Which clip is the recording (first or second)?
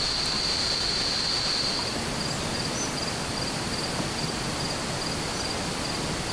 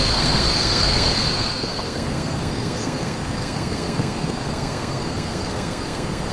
first